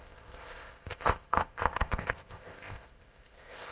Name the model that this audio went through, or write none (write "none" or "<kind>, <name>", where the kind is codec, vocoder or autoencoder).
codec, ZipCodec